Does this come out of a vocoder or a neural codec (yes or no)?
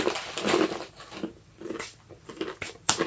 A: yes